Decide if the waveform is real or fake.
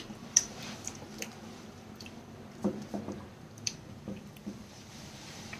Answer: fake